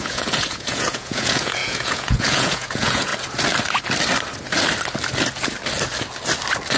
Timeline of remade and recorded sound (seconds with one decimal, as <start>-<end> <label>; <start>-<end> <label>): 0.0-3.1 remade; 3.1-6.8 recorded